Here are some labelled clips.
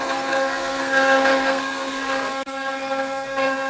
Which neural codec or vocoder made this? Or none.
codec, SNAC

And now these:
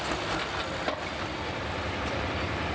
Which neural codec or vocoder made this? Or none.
none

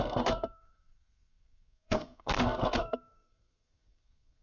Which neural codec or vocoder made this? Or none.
codec, SNAC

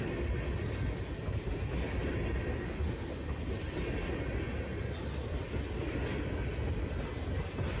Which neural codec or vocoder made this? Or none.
none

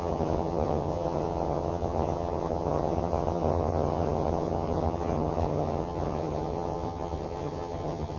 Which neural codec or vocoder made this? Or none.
vocoder, HiFi-GAN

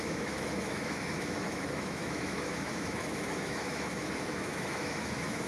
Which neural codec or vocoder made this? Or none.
autoencoder, DAC-VAE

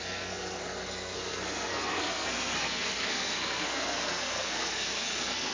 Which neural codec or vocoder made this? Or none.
codec, SNAC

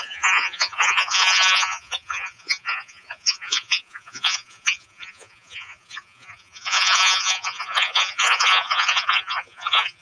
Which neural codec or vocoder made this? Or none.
vocoder, Vocos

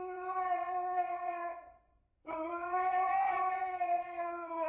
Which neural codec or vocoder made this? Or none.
vocoder, WaveNeXt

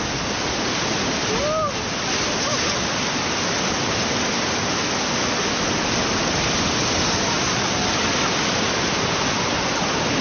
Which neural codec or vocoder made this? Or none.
none